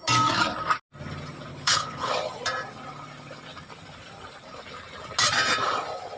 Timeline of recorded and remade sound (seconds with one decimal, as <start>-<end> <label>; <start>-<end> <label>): 0.0-1.5 recorded; 1.5-2.1 remade; 2.1-6.2 recorded